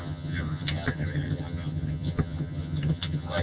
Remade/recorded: remade